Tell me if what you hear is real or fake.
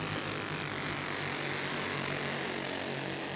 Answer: real